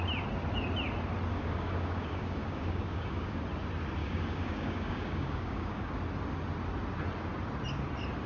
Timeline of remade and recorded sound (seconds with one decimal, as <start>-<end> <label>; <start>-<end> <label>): 0.0-1.3 recorded; 1.3-3.4 remade; 3.4-4.0 recorded; 4.0-5.9 remade; 5.9-8.3 recorded